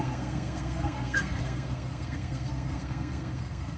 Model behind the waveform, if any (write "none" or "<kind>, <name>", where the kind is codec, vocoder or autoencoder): codec, SNAC